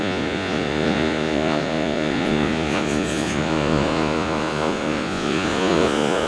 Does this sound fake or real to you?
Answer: fake